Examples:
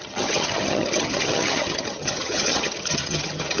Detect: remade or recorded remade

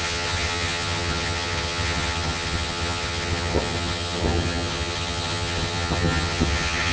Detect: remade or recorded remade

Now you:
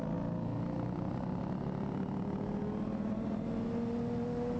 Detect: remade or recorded recorded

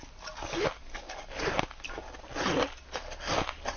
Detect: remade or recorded recorded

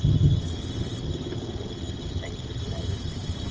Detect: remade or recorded remade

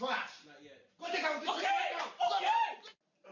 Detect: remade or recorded recorded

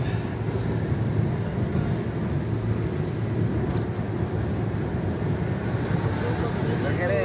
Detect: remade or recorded recorded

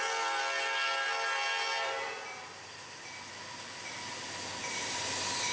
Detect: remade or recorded recorded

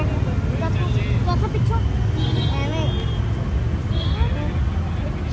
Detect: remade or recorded recorded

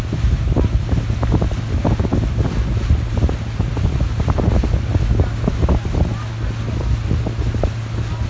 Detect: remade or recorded recorded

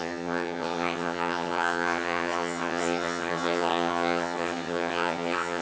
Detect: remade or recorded remade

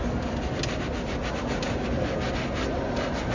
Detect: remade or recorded recorded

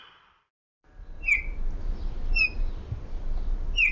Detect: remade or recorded recorded